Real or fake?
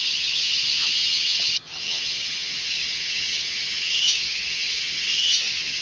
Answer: fake